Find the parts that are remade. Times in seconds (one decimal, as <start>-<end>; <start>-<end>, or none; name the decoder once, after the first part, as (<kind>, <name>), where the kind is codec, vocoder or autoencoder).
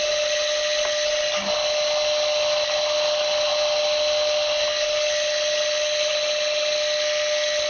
none